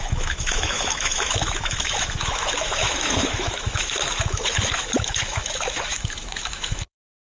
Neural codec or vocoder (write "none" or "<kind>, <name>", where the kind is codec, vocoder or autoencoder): autoencoder, DAC-VAE